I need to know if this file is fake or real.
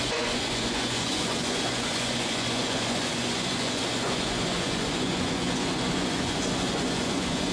fake